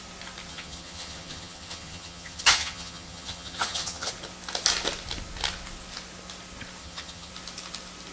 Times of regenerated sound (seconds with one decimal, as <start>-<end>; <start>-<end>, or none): 0.5-4.1; 6.8-7.3